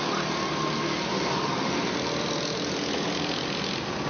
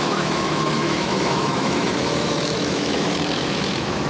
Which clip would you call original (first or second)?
first